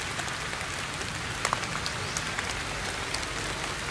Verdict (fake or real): real